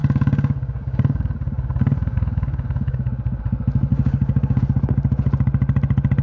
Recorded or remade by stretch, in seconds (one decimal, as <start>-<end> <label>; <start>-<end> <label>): 0.0-3.4 remade; 3.4-3.9 recorded; 3.9-4.6 remade; 4.6-6.2 recorded